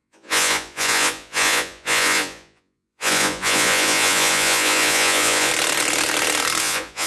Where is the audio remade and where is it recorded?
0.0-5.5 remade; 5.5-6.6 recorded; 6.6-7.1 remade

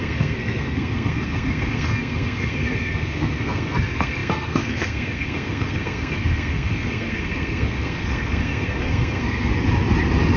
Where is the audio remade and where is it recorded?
0.0-9.5 remade; 9.5-10.4 recorded

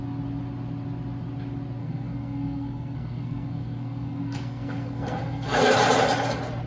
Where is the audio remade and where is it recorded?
0.0-1.8 recorded; 1.8-5.8 remade; 5.8-6.7 recorded

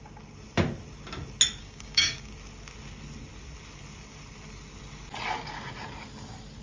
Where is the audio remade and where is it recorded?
0.0-1.6 recorded; 1.6-2.3 remade; 2.3-6.6 recorded

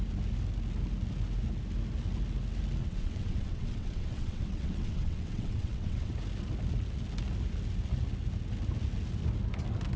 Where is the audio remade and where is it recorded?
0.0-2.8 recorded; 2.8-6.1 remade; 6.1-10.0 recorded